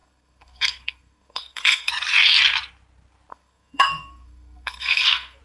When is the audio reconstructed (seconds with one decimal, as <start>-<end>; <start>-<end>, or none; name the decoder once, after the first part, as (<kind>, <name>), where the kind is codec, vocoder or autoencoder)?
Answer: 0.0-1.9 (codec, SNAC); 3.3-5.4